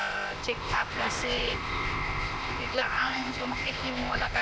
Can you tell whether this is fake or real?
fake